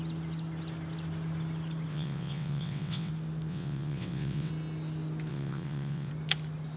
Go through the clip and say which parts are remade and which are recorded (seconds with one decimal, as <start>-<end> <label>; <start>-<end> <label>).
0.0-1.9 recorded; 1.9-3.1 remade; 3.1-3.5 recorded; 3.5-4.5 remade; 4.5-5.3 recorded; 5.3-6.1 remade; 6.1-6.8 recorded